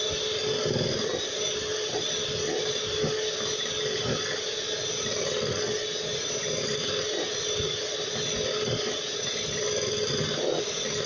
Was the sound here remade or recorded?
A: recorded